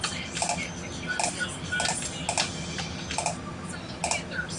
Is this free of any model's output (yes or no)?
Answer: yes